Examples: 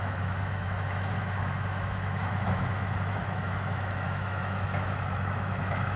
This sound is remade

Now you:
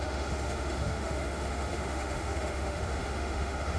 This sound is remade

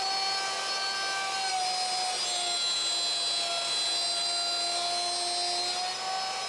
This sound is recorded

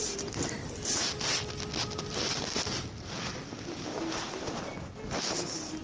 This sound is recorded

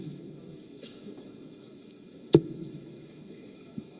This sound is remade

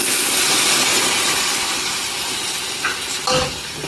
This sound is recorded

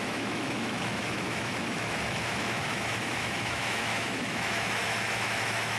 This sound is remade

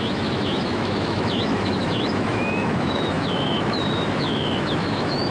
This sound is remade